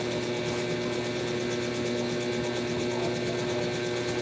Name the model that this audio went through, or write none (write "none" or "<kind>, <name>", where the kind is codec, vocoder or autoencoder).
none